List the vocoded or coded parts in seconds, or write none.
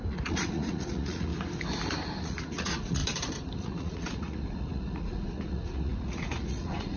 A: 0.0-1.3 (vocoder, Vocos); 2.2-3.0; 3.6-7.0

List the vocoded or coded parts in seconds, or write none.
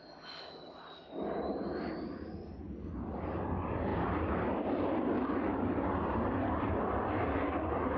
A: none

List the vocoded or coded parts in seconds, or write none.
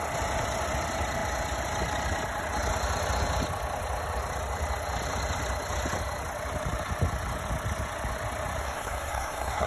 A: 8.6-9.7 (codec, SNAC)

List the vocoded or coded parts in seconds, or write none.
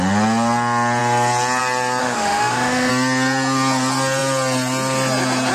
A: 2.0-2.9 (autoencoder, DAC-VAE)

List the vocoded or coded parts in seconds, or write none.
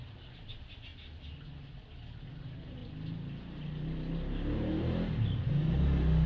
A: none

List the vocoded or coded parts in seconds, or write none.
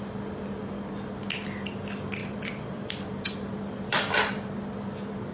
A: 2.2-3.5 (vocoder, BigVGAN v2)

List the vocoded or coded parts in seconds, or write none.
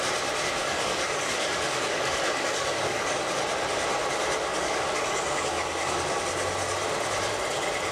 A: 0.6-3.3 (codec, DAC); 4.5-6.2